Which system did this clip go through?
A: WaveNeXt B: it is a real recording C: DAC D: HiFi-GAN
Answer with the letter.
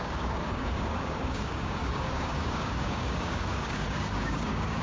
C